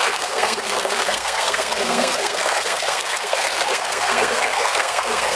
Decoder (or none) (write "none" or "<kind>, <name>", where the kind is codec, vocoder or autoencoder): codec, SNAC